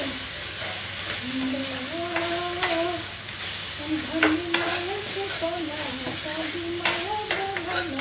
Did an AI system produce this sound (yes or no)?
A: no